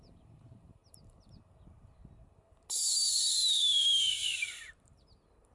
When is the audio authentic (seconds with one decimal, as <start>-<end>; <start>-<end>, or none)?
0.8-4.1